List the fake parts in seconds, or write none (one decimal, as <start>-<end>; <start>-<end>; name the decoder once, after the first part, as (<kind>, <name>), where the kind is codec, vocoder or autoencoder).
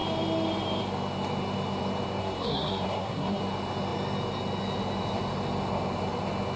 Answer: 2.2-3.4 (codec, SNAC)